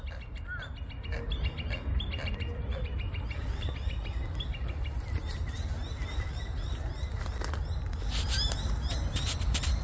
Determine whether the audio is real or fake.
real